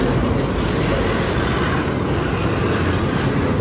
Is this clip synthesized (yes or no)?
no